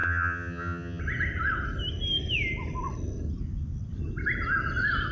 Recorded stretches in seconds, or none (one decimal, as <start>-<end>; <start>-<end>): 1.0-5.1